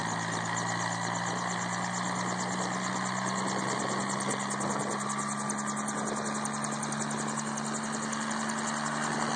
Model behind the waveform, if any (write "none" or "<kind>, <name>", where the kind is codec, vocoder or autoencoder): none